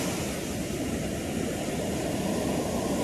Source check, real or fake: real